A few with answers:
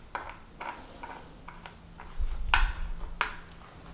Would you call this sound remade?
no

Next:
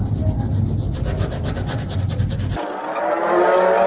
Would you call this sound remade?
no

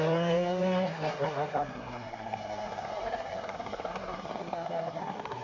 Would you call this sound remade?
yes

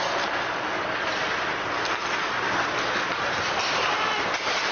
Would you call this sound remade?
no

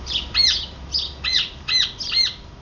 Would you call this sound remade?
no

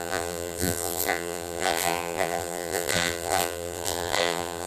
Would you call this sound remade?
yes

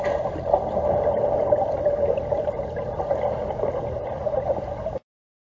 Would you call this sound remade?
no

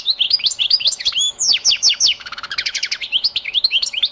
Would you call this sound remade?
yes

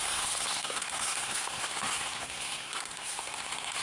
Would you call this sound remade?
yes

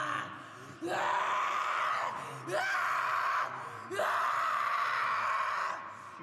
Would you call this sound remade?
no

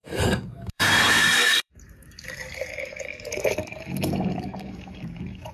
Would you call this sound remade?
yes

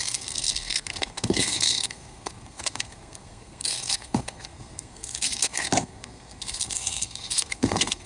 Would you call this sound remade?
yes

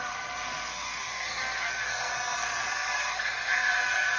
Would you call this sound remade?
yes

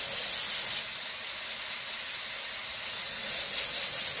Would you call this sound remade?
no